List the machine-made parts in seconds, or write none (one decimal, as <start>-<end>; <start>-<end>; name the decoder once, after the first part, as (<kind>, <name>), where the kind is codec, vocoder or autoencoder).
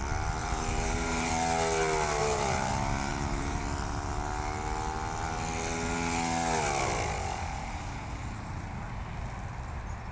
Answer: 0.4-1.3 (vocoder, BigVGAN v2); 2.2-2.7; 3.1-3.6